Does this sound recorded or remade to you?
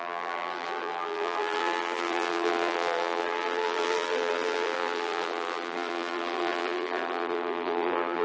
remade